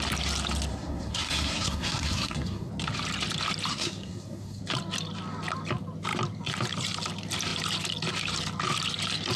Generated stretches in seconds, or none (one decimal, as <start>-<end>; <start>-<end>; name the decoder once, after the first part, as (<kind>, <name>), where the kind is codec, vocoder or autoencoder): 0.7-2.7 (codec, SNAC); 3.7-4.6